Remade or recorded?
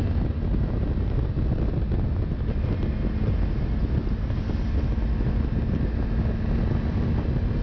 recorded